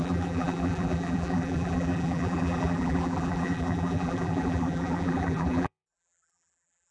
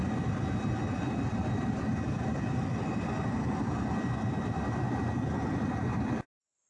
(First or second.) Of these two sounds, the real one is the second